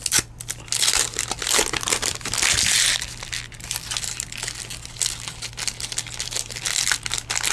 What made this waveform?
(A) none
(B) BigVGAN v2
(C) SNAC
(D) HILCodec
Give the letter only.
A